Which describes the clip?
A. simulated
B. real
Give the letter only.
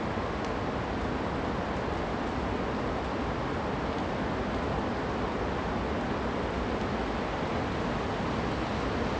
B